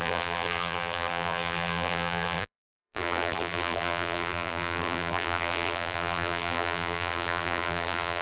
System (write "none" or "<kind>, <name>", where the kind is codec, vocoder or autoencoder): vocoder, BigVGAN v2